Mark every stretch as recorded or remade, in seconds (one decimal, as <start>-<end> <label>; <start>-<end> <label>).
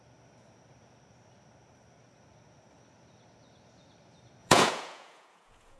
0.0-4.4 recorded; 4.4-5.8 remade